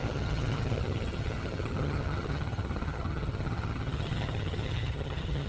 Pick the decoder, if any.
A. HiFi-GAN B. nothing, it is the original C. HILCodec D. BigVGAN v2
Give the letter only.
A